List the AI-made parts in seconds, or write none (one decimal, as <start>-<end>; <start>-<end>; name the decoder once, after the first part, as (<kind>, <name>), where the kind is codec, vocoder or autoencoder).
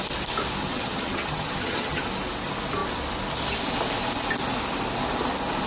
0.6-2.0 (vocoder, HiFi-GAN)